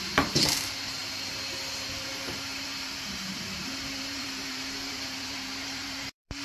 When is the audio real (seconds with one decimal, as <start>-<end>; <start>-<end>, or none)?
1.0-1.9